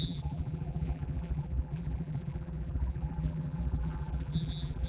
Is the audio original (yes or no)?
no